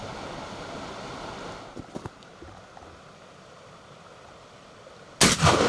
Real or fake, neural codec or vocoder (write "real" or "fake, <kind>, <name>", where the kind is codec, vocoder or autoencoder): real